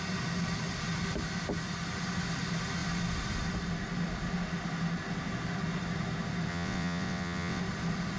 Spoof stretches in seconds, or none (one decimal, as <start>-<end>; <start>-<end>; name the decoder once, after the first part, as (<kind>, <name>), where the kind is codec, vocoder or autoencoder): 6.5-7.6 (vocoder, WaveNeXt)